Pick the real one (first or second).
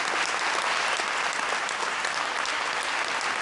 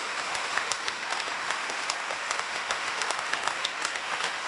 first